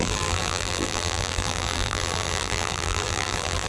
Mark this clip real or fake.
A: fake